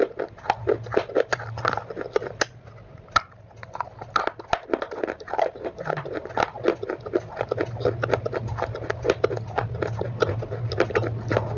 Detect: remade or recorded recorded